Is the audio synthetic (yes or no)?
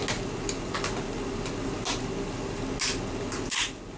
no